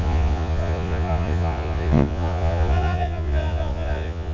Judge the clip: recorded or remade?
remade